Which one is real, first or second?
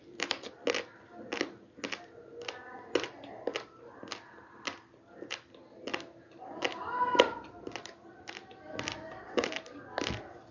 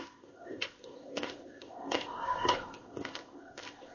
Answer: first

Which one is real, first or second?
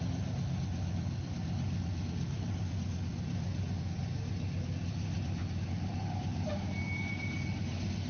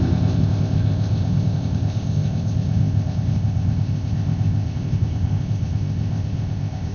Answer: first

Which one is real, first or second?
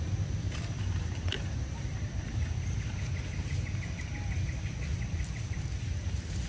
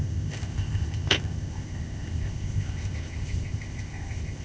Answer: first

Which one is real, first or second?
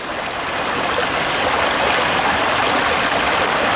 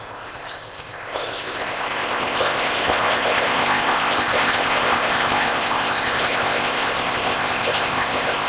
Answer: first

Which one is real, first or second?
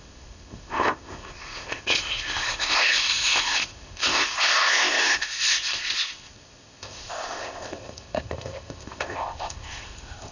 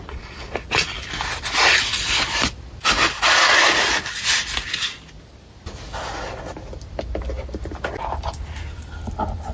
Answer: second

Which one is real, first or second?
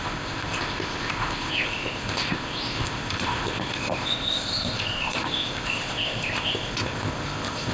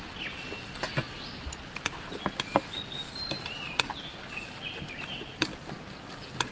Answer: second